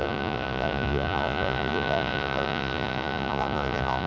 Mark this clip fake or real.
fake